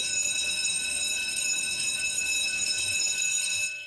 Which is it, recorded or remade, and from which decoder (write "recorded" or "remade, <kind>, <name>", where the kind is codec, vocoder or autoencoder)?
remade, codec, DAC